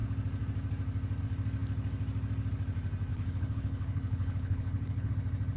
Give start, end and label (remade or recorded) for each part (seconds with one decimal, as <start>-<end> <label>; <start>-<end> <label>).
0.0-3.1 recorded; 3.1-5.1 remade; 5.1-5.6 recorded